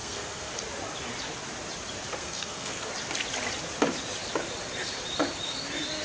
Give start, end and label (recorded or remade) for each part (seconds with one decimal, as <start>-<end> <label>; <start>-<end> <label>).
0.0-0.5 remade; 0.5-2.2 recorded; 2.2-2.9 remade; 2.9-6.0 recorded